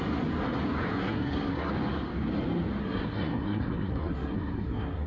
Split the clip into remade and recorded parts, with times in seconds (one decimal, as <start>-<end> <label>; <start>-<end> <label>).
0.0-0.9 recorded; 0.9-1.7 remade; 1.7-2.8 recorded; 2.8-5.1 remade